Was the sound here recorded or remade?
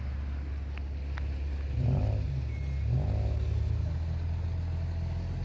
recorded